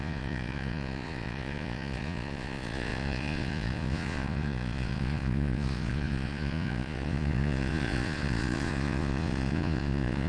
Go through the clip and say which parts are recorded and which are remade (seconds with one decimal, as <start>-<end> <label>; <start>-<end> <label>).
0.0-10.3 remade